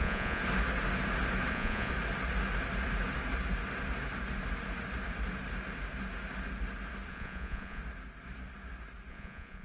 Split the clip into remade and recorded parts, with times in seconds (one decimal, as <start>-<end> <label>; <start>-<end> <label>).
0.0-0.4 remade; 0.4-1.5 recorded; 1.5-1.9 remade; 1.9-7.1 recorded; 7.1-7.8 remade; 7.8-9.1 recorded; 9.1-9.6 remade